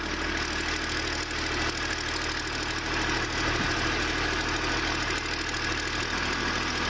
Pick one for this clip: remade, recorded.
recorded